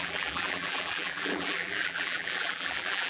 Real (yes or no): no